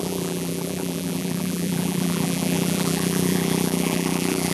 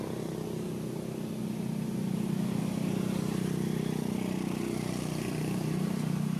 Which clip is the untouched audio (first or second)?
second